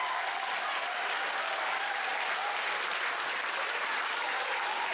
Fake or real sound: real